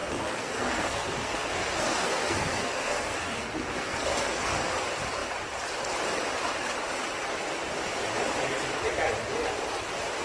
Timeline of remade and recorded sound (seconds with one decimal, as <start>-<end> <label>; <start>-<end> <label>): 0.0-4.7 remade; 4.7-10.2 recorded